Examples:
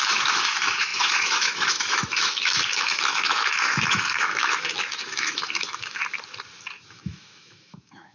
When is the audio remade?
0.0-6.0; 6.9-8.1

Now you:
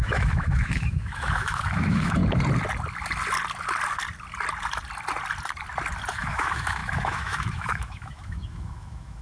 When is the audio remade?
0.0-2.2; 6.1-9.2

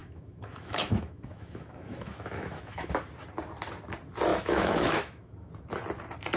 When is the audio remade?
0.0-2.9; 4.3-5.5

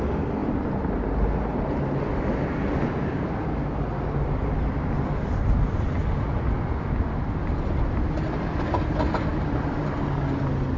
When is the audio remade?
none

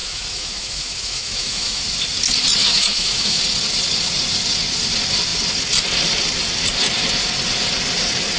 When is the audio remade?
0.0-1.8; 2.6-3.4